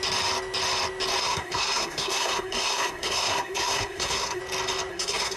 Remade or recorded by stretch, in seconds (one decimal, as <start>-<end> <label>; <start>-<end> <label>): 0.0-1.2 recorded; 1.2-4.4 remade; 4.4-4.9 recorded; 4.9-5.4 remade